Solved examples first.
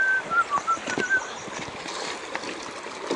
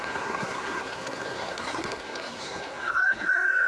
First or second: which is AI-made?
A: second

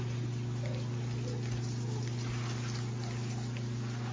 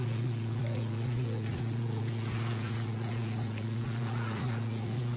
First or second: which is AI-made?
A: second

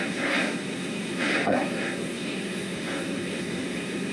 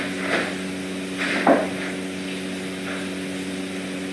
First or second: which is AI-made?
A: first